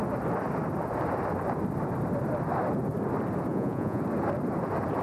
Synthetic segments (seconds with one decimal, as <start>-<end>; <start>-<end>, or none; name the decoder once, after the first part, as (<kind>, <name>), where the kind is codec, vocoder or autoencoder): 3.5-4.0 (vocoder, Vocos)